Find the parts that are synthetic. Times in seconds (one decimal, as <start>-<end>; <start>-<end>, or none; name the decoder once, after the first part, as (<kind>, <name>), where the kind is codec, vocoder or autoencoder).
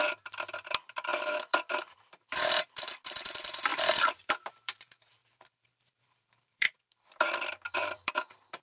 1.1-2.9 (vocoder, BigVGAN v2); 3.7-4.8; 5.2-8.6